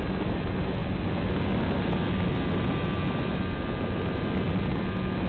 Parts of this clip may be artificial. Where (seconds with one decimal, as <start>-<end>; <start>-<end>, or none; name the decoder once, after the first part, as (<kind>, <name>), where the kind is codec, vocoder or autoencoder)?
none